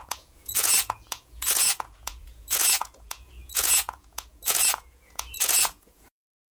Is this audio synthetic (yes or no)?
yes